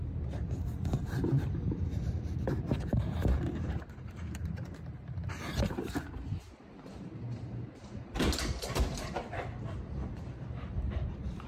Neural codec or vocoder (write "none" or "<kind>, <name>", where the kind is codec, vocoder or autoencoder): vocoder, BigVGAN v2